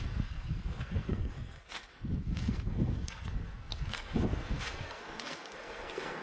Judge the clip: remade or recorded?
remade